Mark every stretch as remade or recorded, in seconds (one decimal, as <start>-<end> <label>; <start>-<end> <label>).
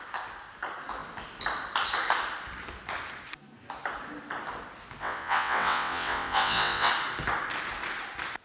0.0-5.0 recorded; 5.0-6.9 remade; 6.9-8.4 recorded